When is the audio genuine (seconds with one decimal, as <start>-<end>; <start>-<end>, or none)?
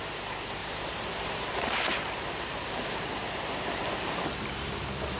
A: none